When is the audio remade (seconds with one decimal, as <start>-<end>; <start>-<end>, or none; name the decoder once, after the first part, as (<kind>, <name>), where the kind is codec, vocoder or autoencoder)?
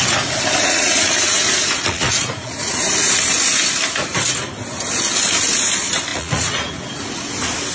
0.6-2.8 (vocoder, Vocos); 6.1-6.7